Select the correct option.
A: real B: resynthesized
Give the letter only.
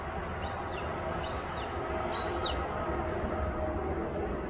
A